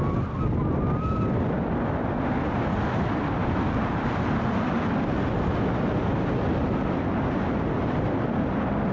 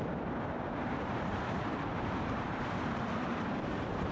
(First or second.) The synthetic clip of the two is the second